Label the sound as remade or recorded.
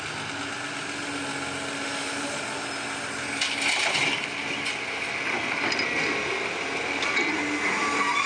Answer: recorded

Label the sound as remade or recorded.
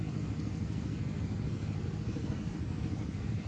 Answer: remade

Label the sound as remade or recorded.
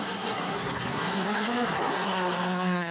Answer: remade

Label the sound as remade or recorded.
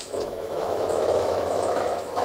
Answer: remade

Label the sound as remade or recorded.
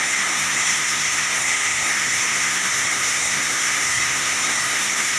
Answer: remade